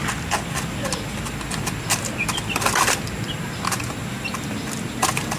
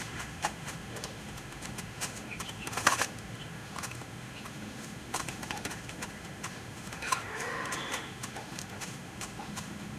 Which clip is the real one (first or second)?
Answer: first